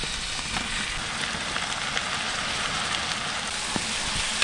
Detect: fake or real real